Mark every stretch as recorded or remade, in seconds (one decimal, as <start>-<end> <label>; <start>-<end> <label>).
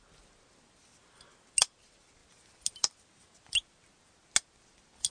0.0-5.1 recorded